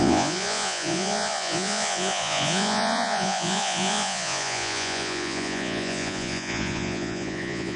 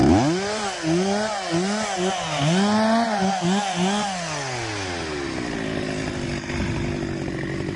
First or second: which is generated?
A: first